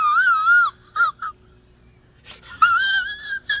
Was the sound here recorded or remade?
recorded